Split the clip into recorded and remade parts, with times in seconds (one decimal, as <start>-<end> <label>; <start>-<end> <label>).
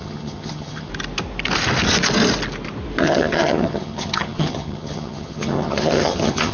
0.0-0.9 remade; 0.9-3.0 recorded; 3.0-6.5 remade